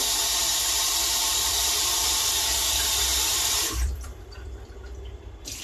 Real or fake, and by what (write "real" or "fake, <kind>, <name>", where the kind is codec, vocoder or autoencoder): fake, vocoder, BigVGAN v2